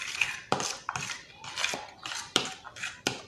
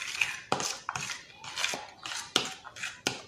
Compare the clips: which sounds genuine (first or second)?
second